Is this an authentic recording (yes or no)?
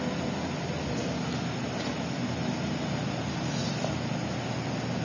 yes